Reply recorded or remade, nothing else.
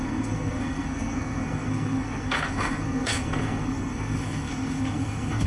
remade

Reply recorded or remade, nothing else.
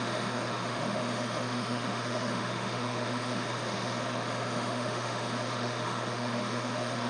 remade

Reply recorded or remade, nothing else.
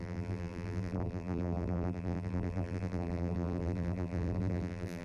remade